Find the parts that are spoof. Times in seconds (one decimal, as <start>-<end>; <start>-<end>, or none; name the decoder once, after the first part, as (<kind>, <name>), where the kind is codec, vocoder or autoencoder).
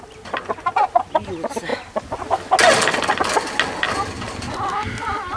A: none